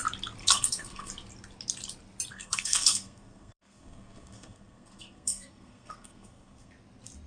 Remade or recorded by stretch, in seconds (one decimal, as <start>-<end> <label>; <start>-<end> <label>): 0.0-0.4 recorded; 0.4-1.1 remade; 1.1-2.3 recorded; 2.3-6.7 remade; 6.7-7.3 recorded